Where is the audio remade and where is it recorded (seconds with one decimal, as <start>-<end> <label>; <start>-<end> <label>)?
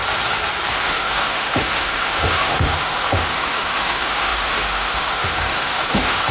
0.0-0.7 recorded; 0.7-6.3 remade